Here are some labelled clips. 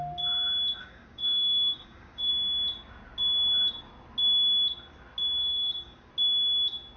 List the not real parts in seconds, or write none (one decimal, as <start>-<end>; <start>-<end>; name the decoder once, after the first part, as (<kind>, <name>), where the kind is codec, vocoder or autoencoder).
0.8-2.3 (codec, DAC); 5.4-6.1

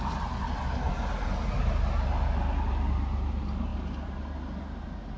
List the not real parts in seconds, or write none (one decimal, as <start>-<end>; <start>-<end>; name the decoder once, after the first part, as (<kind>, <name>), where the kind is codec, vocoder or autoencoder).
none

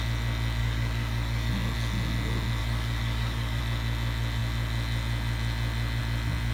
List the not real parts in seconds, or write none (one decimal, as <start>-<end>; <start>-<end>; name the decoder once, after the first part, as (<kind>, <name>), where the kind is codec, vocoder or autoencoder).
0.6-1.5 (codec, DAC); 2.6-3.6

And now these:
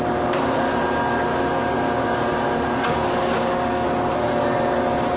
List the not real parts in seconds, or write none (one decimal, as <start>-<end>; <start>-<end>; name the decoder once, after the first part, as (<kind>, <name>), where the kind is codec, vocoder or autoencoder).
1.0-4.1 (codec, DAC)

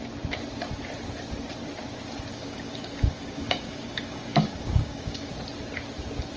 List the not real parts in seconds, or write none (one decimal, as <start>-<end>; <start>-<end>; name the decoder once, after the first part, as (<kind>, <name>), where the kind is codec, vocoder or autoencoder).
2.3-5.3 (codec, DAC)

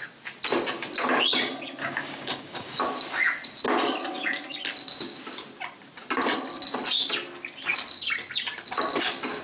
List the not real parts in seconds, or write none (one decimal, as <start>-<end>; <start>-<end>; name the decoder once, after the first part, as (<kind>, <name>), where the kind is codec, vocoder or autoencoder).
1.8-2.8 (codec, DAC)

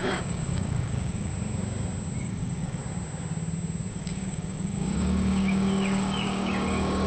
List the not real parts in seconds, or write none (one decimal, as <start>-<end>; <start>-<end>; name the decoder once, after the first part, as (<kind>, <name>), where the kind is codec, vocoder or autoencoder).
0.0-1.3 (codec, DAC); 2.2-2.8; 3.9-7.1

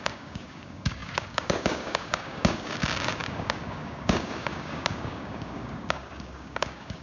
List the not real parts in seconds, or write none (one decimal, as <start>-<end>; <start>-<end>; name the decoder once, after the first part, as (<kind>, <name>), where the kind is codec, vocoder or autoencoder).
0.0-7.0 (codec, DAC)